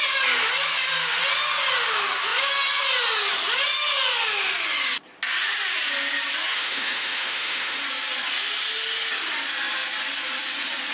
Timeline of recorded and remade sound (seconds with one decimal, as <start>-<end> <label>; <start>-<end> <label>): 0.0-6.5 recorded; 6.5-7.8 remade; 7.8-10.9 recorded